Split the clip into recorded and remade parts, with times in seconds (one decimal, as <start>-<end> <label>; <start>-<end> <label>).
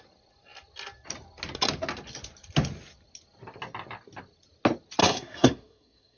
0.0-5.0 recorded; 5.0-6.2 remade